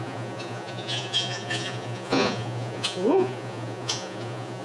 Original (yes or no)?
no